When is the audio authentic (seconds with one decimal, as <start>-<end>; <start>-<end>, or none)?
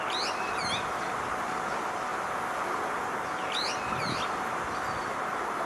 0.0-5.7